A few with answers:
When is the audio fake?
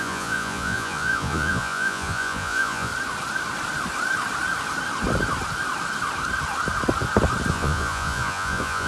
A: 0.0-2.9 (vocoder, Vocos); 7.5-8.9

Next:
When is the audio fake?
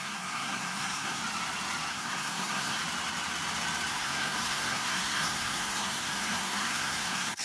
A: 0.0-1.2 (codec, SNAC); 1.9-2.8; 3.9-7.4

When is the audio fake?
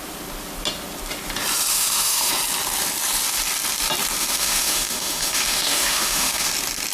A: 1.7-2.3 (autoencoder, DAC-VAE); 4.2-6.5